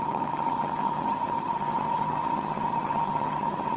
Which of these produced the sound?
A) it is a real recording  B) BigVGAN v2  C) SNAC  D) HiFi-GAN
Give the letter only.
D